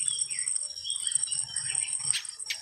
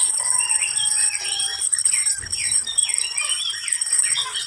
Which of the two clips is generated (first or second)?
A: second